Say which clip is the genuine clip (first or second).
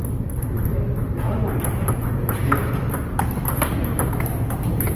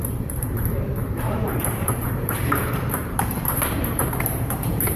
first